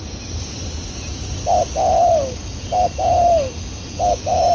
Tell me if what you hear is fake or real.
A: real